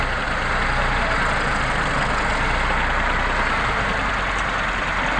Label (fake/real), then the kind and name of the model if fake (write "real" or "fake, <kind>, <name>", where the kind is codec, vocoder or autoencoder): real